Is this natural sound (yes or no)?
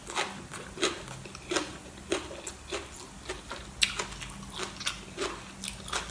yes